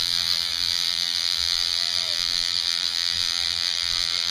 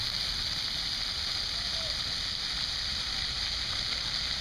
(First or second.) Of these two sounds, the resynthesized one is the first